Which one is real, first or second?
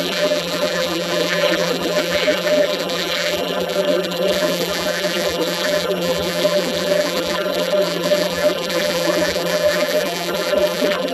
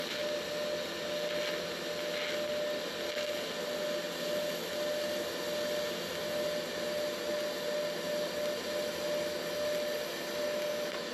second